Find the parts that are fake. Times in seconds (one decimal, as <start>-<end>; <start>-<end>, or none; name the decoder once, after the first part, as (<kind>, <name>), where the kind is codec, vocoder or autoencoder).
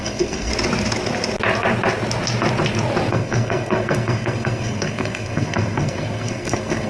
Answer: 0.0-0.5 (codec, SNAC); 3.1-6.9